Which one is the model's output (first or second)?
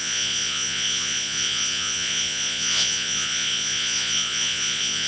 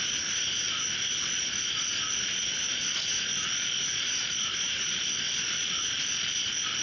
first